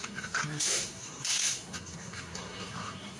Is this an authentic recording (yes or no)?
no